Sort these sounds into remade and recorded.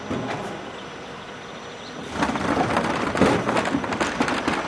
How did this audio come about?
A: recorded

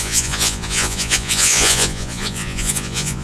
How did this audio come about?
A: remade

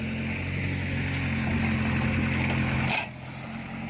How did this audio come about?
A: recorded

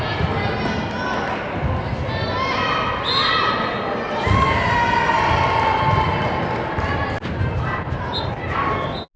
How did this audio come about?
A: recorded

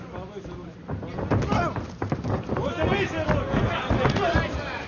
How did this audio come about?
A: recorded